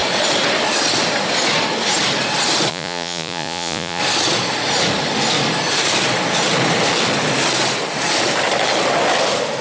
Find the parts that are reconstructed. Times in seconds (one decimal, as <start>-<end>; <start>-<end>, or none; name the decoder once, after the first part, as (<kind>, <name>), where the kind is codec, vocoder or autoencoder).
2.7-4.0 (vocoder, Vocos)